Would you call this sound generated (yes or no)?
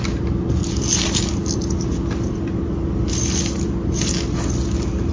no